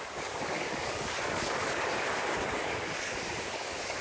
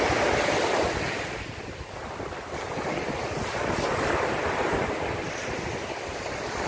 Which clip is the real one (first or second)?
second